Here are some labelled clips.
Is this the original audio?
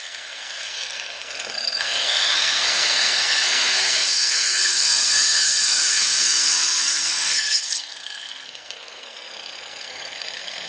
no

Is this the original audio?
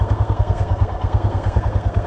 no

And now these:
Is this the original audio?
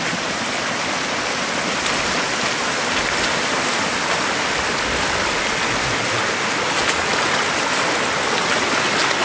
yes